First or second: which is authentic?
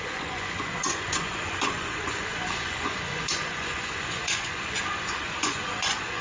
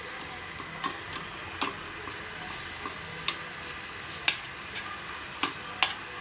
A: second